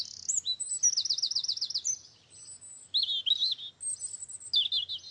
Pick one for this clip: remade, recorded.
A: recorded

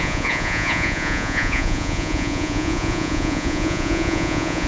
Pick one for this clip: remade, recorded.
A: remade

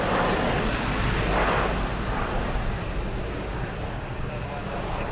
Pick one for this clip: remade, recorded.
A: recorded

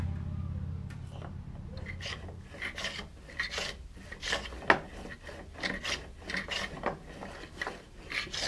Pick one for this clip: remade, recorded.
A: recorded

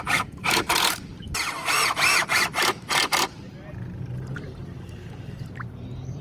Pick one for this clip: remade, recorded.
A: remade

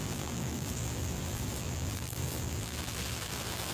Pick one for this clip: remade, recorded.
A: remade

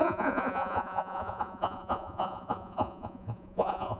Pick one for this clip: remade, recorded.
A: remade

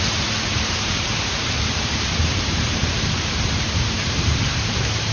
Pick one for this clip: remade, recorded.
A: remade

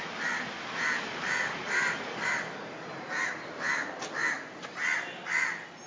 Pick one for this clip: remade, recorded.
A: recorded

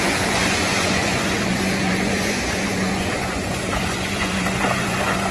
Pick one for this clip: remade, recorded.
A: remade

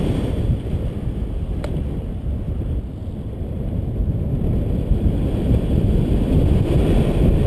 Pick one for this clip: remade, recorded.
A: recorded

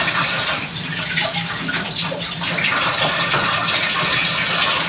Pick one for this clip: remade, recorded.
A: recorded